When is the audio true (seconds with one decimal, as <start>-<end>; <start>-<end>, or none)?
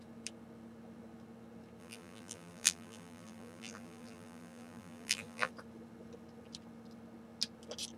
0.0-1.8; 5.5-8.0